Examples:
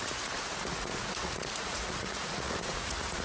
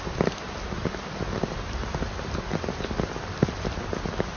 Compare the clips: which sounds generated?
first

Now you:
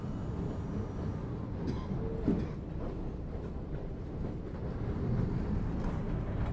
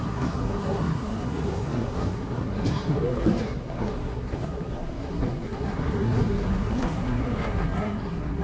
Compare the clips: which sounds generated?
second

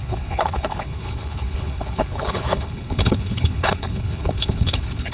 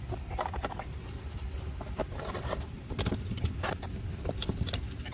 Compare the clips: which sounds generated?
first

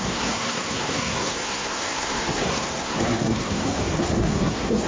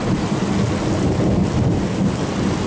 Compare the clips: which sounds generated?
first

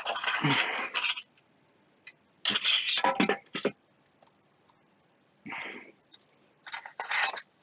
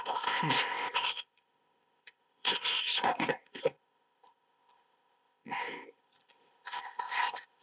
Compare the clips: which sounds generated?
second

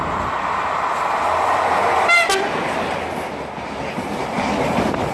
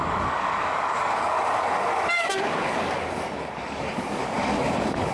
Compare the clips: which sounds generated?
second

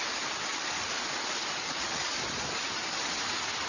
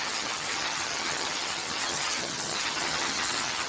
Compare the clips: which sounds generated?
second